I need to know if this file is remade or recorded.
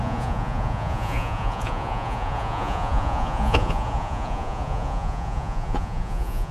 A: remade